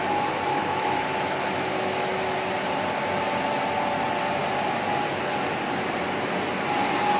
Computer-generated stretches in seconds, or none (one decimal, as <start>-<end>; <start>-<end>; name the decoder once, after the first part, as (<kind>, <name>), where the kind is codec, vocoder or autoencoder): 0.5-2.2 (autoencoder, DAC-VAE)